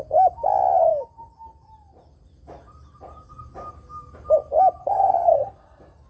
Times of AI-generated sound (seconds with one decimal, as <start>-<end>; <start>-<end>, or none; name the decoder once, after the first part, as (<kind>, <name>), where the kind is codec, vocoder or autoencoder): 4.8-5.5 (vocoder, HiFi-GAN)